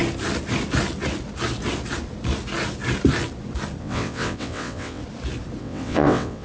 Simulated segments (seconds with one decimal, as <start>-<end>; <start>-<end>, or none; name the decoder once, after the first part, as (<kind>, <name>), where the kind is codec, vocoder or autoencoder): 3.8-5.0 (vocoder, WaveNeXt); 5.6-6.4